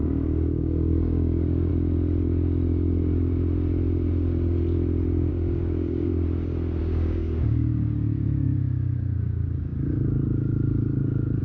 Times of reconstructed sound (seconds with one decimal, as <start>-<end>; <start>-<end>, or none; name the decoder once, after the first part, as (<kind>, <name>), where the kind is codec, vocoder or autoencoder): 0.0-1.7 (codec, DAC); 5.3-6.1; 6.8-11.4